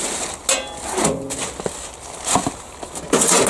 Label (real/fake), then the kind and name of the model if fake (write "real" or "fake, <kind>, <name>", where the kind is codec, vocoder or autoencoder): real